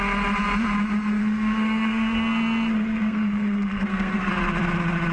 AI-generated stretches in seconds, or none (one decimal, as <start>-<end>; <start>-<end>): 1.2-4.3